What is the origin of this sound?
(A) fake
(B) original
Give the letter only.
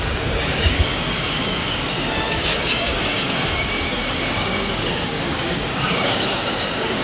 A